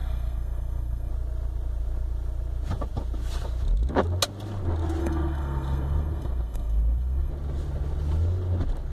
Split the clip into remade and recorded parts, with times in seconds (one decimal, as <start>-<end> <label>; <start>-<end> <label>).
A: 0.0-1.1 remade; 1.1-5.0 recorded; 5.0-7.3 remade; 7.3-8.9 recorded